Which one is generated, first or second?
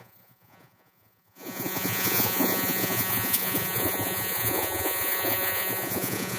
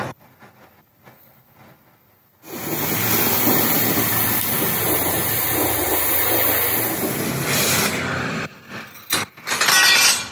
first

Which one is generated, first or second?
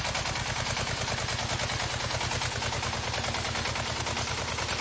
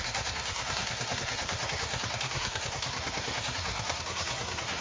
second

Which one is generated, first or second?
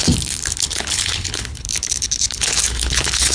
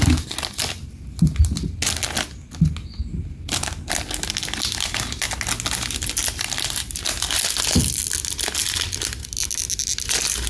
first